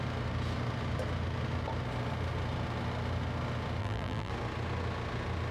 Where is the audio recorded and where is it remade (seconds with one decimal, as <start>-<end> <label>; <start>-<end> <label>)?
0.0-3.8 recorded; 3.8-4.3 remade; 4.3-5.5 recorded